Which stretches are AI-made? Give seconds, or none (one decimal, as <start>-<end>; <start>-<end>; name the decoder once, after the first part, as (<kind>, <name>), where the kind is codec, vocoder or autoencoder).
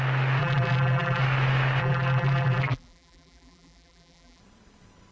0.4-1.2 (vocoder, BigVGAN v2); 1.8-4.4